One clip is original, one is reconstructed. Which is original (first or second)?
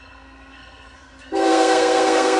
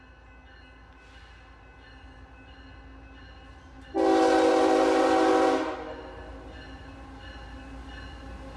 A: second